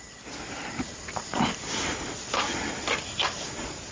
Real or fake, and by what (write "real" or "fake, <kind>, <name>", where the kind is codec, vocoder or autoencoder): real